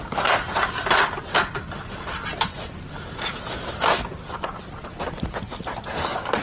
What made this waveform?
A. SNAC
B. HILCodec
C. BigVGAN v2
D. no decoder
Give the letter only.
D